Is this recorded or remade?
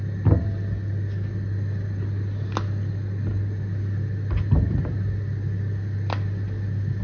recorded